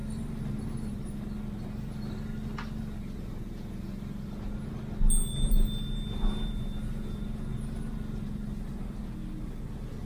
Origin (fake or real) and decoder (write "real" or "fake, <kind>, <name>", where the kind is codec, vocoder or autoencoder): real